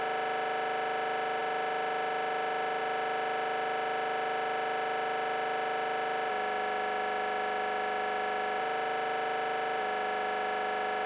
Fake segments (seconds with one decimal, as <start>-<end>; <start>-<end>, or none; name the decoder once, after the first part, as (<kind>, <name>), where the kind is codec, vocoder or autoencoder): 0.0-6.3 (autoencoder, DAC-VAE); 8.6-9.8